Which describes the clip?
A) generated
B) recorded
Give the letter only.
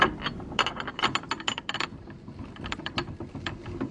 B